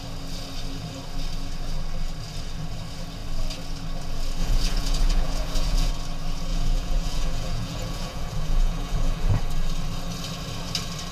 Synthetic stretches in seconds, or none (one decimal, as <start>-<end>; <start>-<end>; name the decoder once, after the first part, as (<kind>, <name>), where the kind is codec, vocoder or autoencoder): 4.4-5.9 (vocoder, Vocos); 6.5-9.4